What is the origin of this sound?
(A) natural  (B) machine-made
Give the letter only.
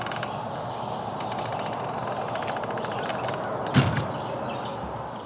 A